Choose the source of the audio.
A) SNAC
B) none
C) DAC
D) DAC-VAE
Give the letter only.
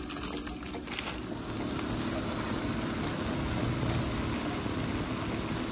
B